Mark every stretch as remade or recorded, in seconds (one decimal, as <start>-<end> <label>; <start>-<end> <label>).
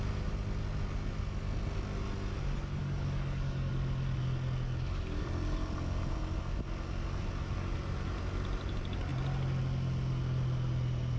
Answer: 0.0-2.8 recorded; 2.8-3.7 remade; 3.7-11.2 recorded